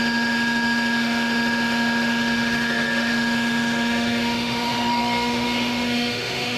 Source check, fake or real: fake